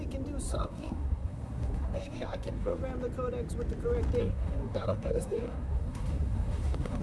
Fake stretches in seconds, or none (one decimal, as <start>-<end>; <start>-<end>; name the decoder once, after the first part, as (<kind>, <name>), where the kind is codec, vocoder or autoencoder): 0.5-2.8 (codec, SNAC); 4.2-7.0

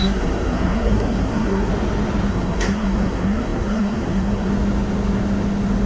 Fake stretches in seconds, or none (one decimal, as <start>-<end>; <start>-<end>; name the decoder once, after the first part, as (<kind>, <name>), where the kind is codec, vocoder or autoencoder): 0.0-1.7 (codec, SNAC); 2.3-4.5

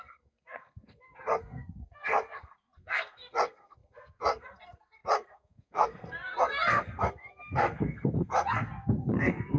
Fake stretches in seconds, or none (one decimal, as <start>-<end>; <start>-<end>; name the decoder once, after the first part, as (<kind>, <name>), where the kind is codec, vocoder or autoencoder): 0.0-9.6 (codec, SNAC)

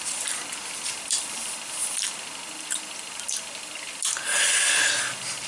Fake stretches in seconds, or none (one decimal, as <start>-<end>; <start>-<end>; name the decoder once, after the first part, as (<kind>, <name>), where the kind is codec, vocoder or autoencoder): none

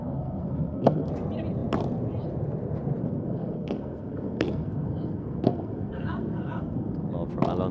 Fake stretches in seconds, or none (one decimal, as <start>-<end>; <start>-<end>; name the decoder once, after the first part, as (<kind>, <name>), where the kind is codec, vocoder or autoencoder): 0.0-1.1 (codec, SNAC); 3.0-7.1

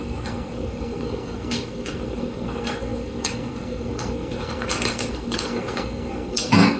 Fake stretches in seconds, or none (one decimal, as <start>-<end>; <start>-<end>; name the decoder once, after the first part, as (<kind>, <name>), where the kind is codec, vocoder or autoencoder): 0.0-6.8 (codec, SNAC)

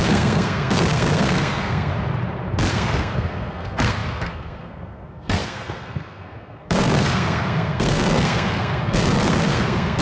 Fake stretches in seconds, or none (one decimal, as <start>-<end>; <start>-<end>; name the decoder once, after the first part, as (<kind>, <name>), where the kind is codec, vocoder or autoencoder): 0.0-1.9 (codec, SNAC); 2.7-10.0